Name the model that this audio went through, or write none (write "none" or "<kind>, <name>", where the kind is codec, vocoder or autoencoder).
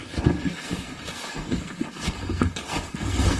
codec, SNAC